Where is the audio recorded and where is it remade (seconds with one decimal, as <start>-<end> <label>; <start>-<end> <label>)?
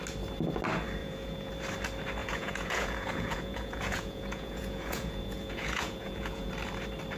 0.0-1.0 recorded; 1.0-1.5 remade; 1.5-2.2 recorded; 2.2-6.5 remade; 6.5-7.2 recorded